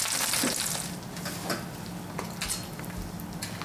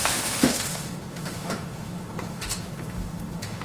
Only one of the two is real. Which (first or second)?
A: first